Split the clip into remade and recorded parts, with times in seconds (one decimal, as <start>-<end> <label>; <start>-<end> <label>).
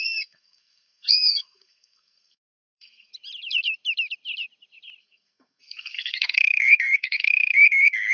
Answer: 0.0-3.1 remade; 3.1-5.0 recorded; 5.0-8.1 remade